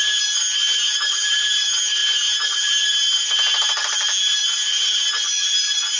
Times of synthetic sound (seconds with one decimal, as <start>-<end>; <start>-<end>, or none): none